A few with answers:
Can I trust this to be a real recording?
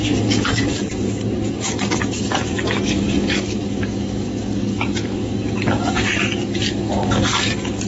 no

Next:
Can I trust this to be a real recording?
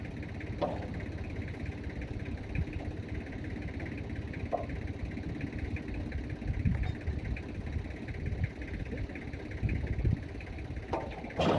yes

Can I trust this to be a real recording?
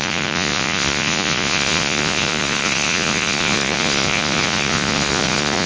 no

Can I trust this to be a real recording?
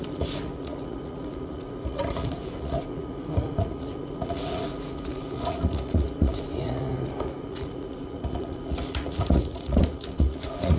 no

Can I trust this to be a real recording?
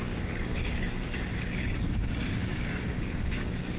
no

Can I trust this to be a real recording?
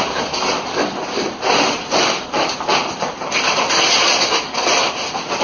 yes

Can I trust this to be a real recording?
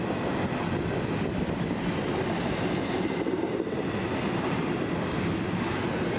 yes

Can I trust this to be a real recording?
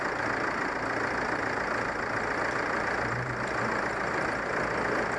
yes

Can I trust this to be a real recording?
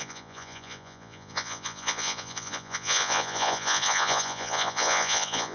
no